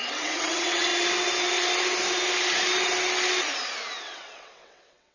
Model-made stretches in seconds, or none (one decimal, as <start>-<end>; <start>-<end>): 0.0-0.9; 4.0-5.1